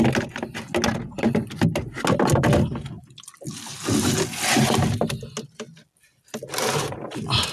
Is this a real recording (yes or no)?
yes